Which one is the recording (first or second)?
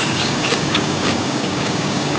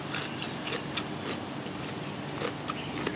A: second